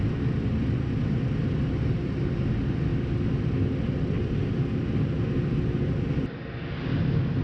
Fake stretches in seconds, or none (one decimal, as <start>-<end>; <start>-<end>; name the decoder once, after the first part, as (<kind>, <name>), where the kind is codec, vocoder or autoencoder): none